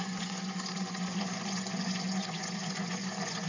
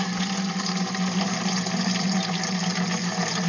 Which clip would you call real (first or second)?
second